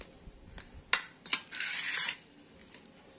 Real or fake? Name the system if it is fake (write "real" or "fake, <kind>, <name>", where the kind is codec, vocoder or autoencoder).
real